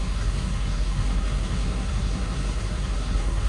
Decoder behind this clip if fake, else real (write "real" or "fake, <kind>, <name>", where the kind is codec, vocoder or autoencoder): fake, codec, SNAC